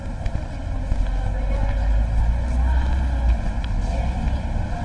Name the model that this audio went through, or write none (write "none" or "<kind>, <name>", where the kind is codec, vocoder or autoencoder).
none